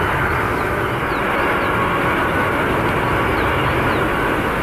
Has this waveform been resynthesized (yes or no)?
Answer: no